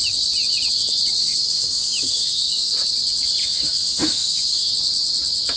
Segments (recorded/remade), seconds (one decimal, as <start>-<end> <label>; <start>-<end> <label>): 0.0-1.2 recorded; 1.2-2.7 remade; 2.7-3.4 recorded; 3.4-4.7 remade; 4.7-5.6 recorded